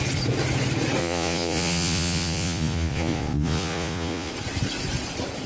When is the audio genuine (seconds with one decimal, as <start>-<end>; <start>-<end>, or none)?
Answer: 0.0-1.0; 4.3-5.5